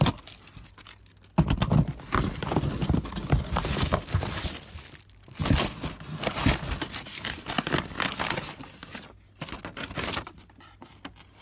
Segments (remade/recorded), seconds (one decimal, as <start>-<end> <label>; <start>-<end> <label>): 0.0-11.4 recorded